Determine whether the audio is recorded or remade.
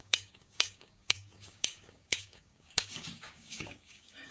remade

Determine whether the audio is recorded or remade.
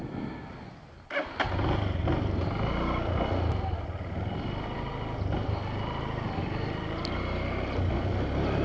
recorded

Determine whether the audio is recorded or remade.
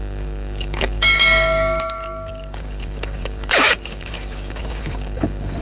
remade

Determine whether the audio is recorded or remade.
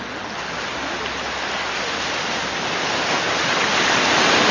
recorded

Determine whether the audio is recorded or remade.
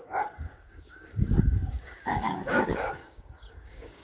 remade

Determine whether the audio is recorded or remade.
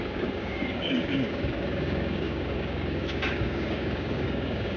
remade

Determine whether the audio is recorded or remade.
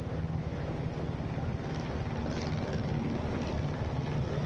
recorded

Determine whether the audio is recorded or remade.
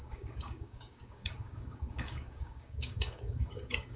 remade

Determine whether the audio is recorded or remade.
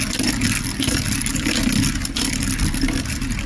recorded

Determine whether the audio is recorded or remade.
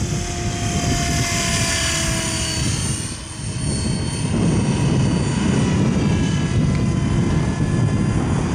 recorded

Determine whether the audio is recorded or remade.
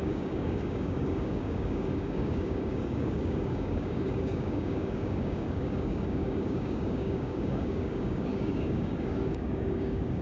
remade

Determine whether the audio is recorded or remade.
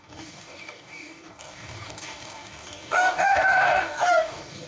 remade